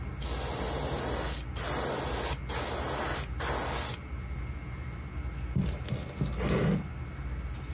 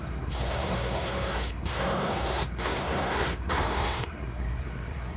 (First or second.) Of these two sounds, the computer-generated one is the second